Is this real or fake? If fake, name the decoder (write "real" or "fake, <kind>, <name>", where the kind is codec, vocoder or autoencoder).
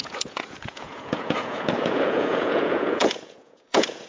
fake, vocoder, Vocos